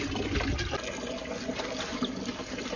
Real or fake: real